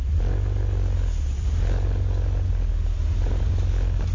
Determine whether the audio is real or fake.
real